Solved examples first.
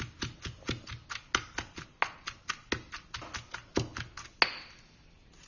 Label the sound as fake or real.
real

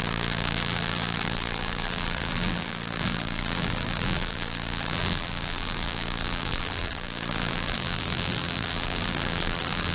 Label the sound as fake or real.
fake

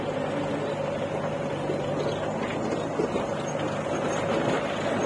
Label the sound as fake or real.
real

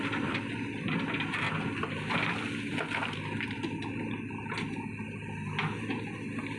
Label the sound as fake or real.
real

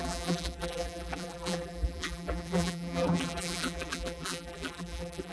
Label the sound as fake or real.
fake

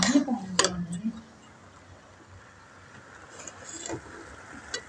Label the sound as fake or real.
real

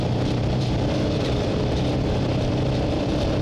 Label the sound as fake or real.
fake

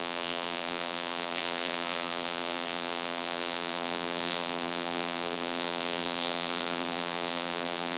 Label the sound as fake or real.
fake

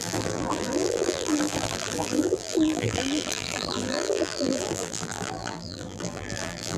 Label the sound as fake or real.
fake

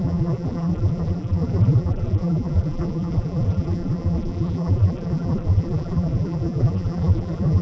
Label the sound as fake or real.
fake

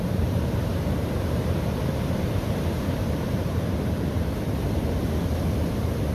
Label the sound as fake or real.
fake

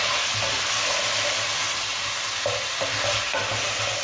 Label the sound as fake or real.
real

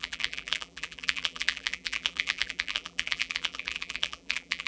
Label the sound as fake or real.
fake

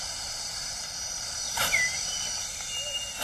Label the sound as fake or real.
real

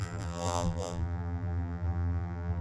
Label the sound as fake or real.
fake